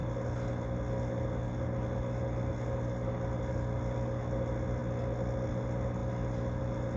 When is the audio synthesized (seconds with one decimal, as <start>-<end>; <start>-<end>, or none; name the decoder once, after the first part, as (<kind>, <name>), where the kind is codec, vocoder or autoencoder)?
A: none